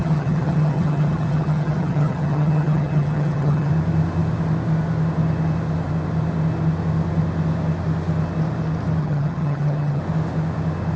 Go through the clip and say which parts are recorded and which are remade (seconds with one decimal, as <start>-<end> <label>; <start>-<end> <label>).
0.0-3.7 remade; 3.7-9.0 recorded; 9.0-10.0 remade; 10.0-11.0 recorded